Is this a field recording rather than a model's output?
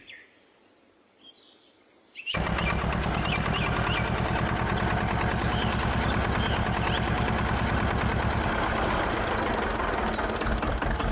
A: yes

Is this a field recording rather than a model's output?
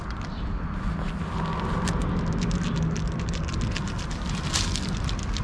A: yes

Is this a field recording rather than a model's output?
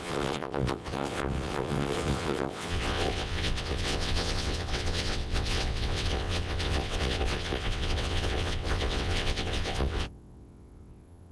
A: no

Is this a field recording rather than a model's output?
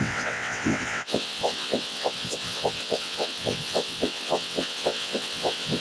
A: no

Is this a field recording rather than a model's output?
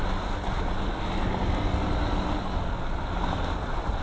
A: yes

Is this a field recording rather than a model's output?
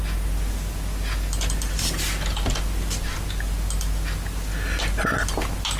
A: yes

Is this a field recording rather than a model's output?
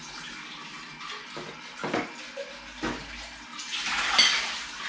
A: yes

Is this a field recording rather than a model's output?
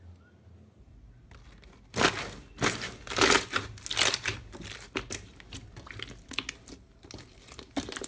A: yes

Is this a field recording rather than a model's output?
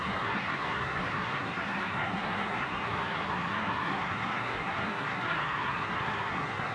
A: no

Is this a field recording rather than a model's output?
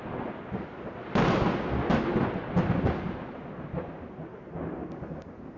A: yes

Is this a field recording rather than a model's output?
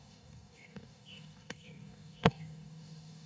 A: no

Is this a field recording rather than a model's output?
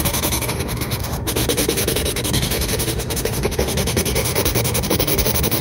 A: no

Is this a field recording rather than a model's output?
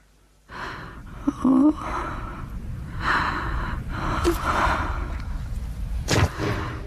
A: yes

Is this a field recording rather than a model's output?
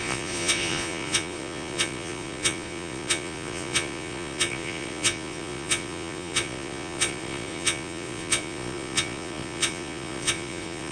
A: no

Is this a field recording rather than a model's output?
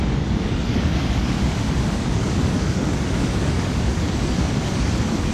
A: no